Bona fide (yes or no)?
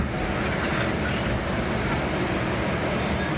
yes